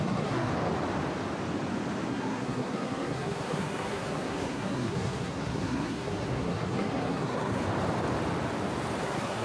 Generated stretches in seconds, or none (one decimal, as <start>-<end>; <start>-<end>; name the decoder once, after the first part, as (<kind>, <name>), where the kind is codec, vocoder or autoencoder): 0.0-0.5 (codec, SNAC); 2.1-7.6; 9.0-9.4